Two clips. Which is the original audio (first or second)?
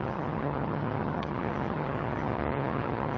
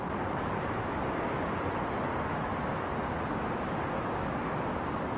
second